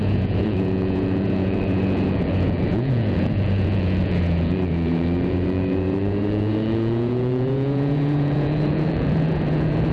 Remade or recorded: remade